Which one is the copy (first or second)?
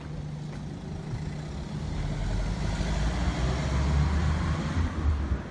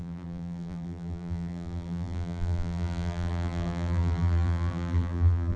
second